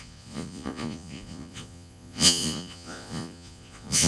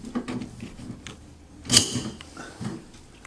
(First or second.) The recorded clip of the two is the second